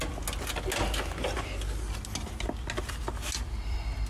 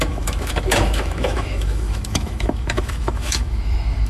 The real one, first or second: first